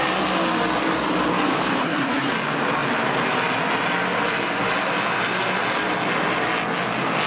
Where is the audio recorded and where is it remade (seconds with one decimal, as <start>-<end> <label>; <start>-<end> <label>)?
0.0-1.8 recorded; 1.8-2.3 remade; 2.3-7.3 recorded